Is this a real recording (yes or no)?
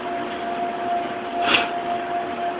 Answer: yes